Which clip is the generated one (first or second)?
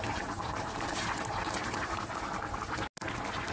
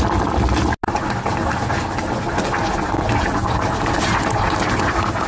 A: first